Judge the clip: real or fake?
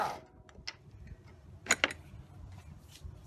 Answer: real